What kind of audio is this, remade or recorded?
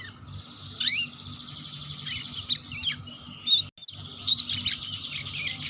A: recorded